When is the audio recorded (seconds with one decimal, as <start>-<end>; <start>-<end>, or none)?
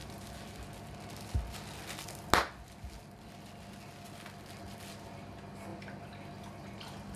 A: 0.0-7.2